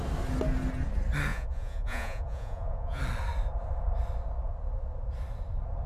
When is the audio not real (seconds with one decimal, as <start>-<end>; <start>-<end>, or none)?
1.3-3.0